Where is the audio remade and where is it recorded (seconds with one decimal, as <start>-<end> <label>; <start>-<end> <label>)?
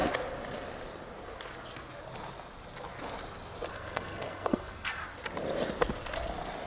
0.0-3.7 recorded; 3.7-5.0 remade; 5.0-6.7 recorded